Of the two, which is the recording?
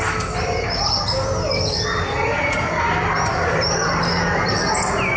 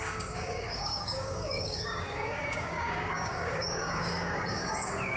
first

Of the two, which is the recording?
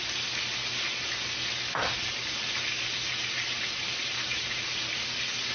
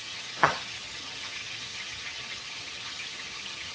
first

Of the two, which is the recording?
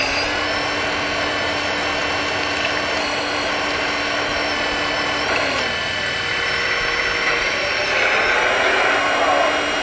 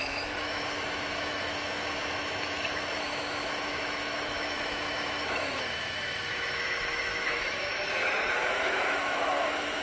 first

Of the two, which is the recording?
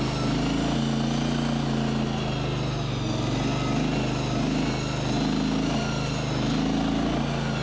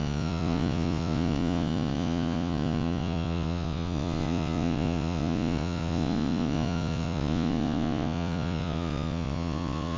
first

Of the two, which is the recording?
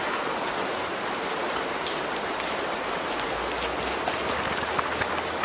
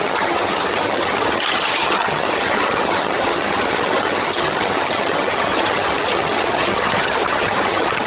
first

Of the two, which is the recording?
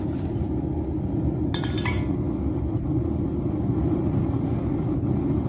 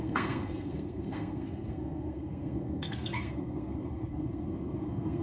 first